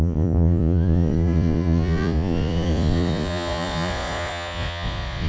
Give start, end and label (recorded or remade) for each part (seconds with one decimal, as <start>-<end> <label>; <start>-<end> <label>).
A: 0.0-5.3 remade